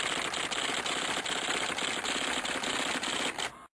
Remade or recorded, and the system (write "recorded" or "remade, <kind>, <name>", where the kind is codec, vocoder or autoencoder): recorded